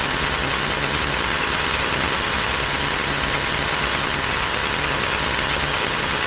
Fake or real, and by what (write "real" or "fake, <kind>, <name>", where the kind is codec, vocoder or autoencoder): fake, vocoder, HiFi-GAN